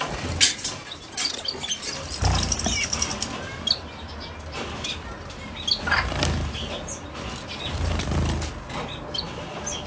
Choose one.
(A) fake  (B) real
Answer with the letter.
B